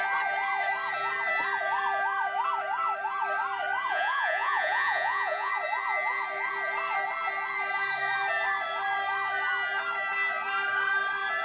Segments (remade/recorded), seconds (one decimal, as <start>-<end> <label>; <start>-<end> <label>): 0.0-3.9 recorded; 3.9-5.5 remade; 5.5-11.4 recorded